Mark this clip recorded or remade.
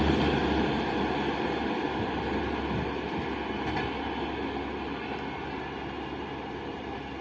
recorded